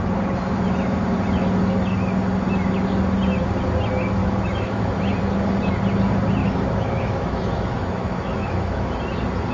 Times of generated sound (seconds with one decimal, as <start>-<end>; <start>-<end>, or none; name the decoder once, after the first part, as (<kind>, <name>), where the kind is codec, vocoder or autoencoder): 4.2-5.0 (autoencoder, DAC-VAE); 6.4-8.9